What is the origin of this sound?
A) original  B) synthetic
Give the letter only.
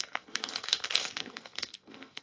B